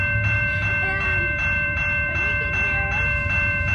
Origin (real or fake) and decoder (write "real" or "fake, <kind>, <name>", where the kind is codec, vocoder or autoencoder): fake, vocoder, BigVGAN v2